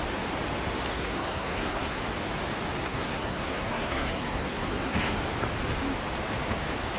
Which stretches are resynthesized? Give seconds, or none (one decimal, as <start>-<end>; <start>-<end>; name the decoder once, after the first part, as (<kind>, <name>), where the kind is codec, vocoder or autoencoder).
0.9-2.0 (codec, SNAC); 2.8-5.2